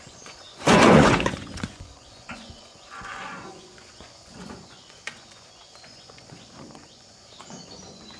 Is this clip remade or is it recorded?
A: remade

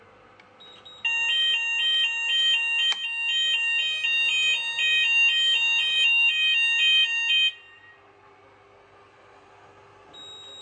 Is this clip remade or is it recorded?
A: recorded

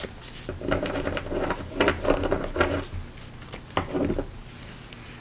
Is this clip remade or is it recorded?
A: recorded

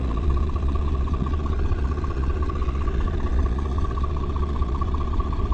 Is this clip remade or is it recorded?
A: remade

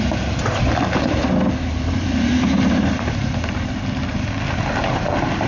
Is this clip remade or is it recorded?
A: recorded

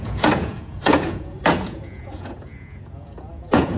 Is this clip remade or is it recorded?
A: remade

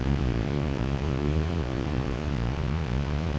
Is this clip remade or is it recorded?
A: remade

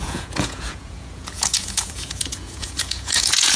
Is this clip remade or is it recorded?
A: remade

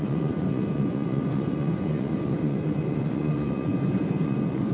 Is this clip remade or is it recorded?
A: remade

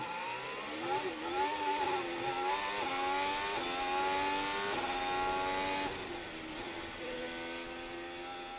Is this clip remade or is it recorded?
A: recorded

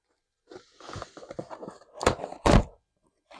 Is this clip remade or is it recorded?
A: recorded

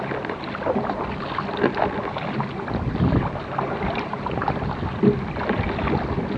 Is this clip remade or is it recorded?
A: recorded